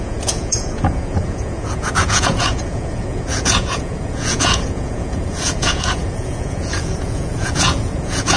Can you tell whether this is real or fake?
fake